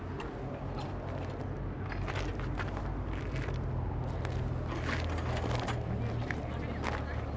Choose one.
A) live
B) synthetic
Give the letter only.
A